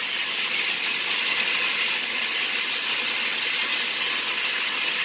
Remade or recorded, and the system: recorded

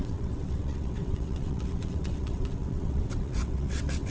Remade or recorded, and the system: remade, vocoder, WaveNeXt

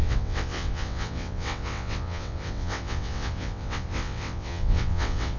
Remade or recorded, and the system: remade, vocoder, WaveNeXt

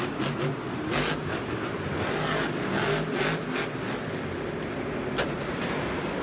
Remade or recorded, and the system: recorded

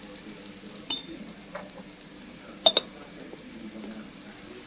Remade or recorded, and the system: recorded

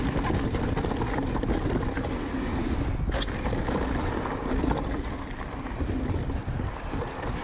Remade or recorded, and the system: recorded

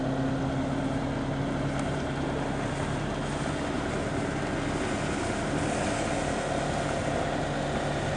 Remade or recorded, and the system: recorded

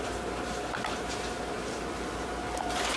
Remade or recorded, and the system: recorded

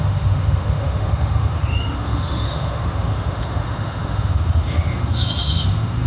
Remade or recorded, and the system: remade, autoencoder, DAC-VAE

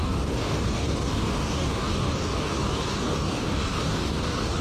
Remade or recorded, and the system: remade, codec, DAC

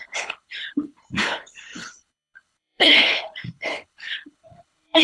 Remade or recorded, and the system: remade, codec, HILCodec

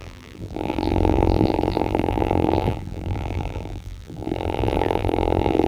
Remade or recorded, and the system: remade, vocoder, BigVGAN v2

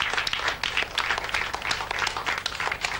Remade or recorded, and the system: recorded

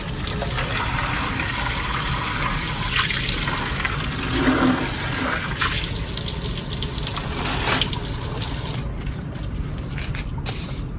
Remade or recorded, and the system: recorded